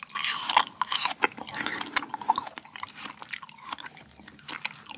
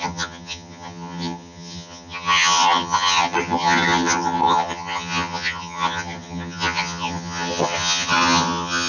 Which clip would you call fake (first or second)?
second